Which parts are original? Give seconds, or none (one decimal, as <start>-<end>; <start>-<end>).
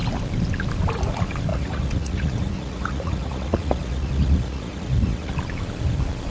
0.0-1.5; 5.3-6.3